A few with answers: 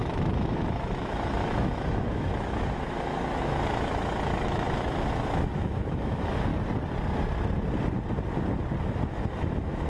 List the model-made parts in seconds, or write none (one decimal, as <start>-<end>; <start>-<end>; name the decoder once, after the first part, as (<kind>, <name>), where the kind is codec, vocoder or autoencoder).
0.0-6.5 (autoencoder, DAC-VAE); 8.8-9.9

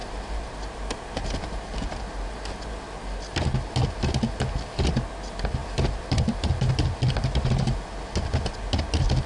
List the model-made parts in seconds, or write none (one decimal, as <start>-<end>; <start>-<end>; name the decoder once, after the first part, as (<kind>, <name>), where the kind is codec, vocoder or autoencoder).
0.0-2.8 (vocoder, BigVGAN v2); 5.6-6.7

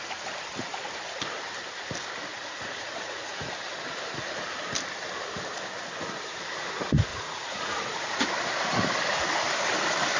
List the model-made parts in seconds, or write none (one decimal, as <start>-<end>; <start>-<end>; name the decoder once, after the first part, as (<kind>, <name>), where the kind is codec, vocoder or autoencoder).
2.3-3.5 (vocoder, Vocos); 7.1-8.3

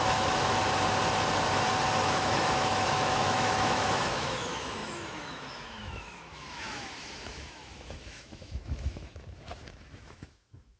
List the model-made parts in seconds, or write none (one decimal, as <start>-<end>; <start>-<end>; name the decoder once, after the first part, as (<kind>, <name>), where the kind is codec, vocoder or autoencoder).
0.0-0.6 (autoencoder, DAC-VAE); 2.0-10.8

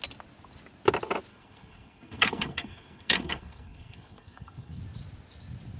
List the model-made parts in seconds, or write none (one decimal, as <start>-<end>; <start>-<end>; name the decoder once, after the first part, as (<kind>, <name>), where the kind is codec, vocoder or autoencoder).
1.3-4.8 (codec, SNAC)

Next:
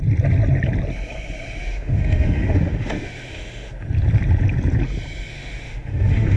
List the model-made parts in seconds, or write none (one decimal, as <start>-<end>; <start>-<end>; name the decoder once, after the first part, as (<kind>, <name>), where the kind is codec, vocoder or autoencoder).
1.6-3.7 (autoencoder, DAC-VAE); 5.3-6.4